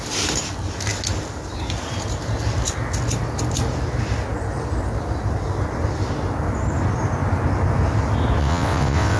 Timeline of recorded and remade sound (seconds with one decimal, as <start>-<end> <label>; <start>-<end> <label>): 0.0-8.4 recorded; 8.4-9.2 remade